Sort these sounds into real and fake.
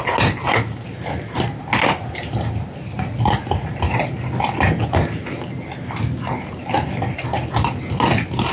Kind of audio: real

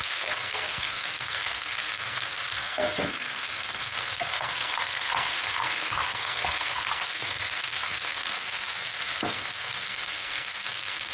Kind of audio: fake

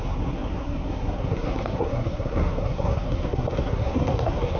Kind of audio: fake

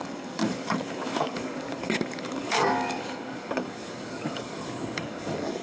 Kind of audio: fake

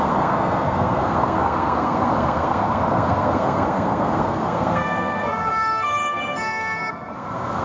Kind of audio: fake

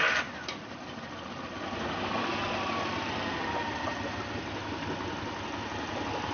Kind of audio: real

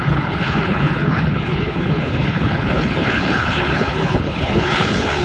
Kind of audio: fake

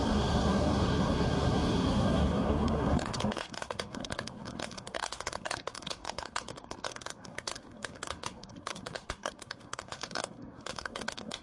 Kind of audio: fake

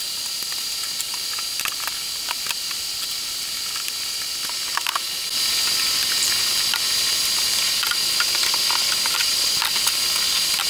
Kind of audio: real